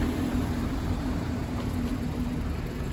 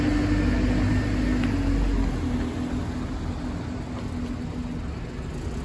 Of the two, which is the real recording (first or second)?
second